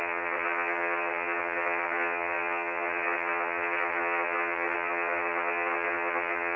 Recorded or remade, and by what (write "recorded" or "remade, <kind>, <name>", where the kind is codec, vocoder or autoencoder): remade, vocoder, HiFi-GAN